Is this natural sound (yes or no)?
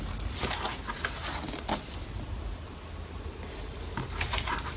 yes